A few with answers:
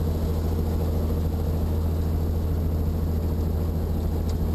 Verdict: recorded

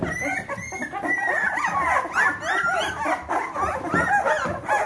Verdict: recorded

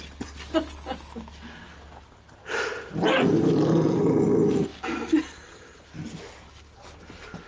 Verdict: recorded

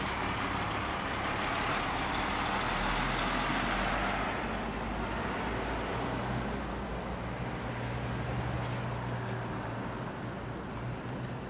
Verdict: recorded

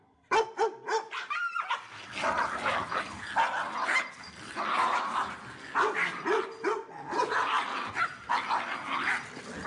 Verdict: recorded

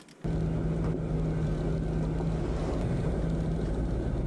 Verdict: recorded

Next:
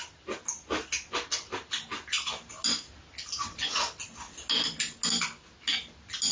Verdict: recorded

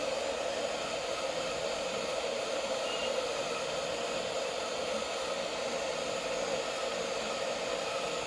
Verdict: recorded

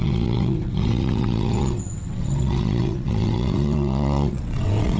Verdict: remade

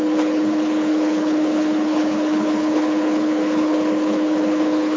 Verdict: remade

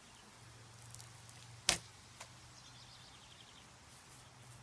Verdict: recorded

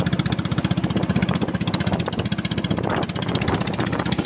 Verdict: recorded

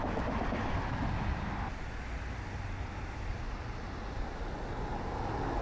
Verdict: recorded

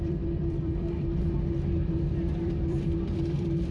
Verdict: remade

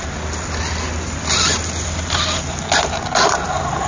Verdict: recorded